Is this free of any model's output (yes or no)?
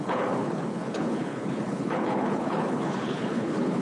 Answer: no